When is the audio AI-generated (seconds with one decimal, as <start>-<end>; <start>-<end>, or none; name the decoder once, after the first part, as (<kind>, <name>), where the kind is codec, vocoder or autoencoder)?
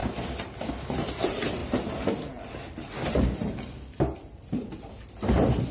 none